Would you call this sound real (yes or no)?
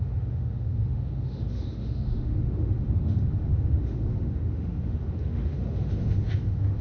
no